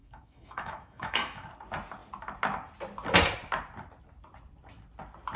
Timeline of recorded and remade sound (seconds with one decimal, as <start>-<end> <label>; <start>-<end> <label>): 0.0-1.5 remade; 1.5-5.4 recorded